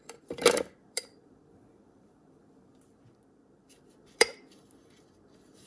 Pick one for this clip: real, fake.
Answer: fake